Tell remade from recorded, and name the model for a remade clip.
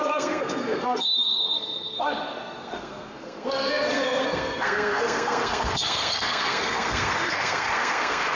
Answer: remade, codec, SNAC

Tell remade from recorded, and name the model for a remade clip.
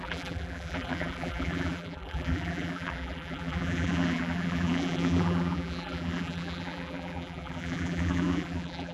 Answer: remade, vocoder, BigVGAN v2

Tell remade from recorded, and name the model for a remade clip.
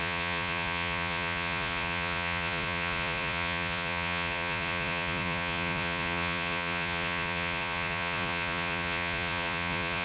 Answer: remade, vocoder, Vocos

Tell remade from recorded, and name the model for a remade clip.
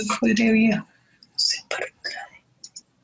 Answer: recorded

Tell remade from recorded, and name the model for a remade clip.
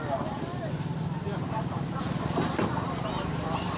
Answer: recorded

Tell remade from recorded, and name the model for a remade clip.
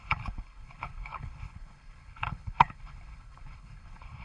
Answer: remade, codec, HILCodec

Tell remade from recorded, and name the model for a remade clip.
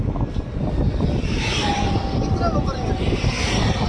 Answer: recorded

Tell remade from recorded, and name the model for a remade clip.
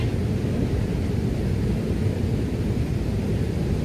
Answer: recorded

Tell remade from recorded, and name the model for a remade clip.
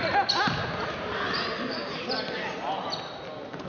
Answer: recorded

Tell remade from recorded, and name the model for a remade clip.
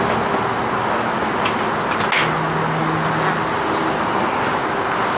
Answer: recorded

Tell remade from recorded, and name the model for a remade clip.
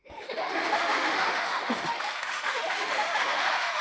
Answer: remade, autoencoder, DAC-VAE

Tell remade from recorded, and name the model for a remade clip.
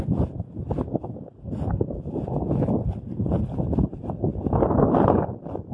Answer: recorded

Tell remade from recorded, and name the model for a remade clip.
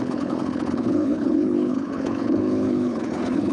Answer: remade, codec, HILCodec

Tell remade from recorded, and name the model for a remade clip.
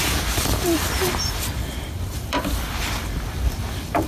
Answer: remade, vocoder, BigVGAN v2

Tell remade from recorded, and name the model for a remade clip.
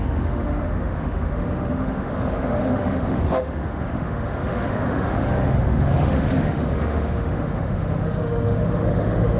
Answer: remade, autoencoder, DAC-VAE